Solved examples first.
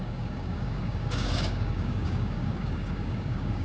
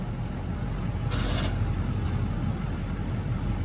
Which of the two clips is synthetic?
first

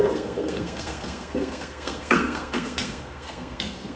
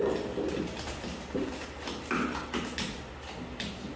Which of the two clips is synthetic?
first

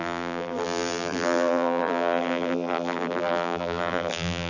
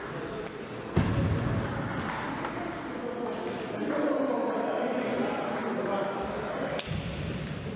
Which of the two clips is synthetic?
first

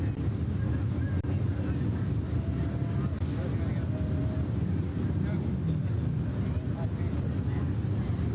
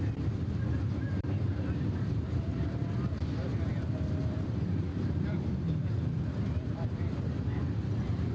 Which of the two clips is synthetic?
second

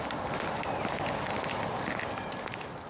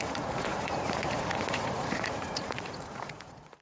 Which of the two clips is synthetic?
second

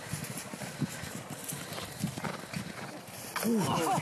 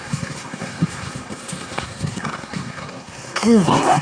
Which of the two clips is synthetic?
second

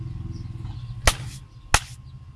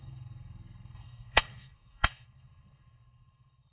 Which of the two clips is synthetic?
second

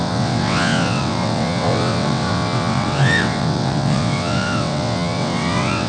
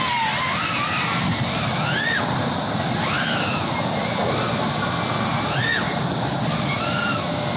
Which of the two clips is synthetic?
first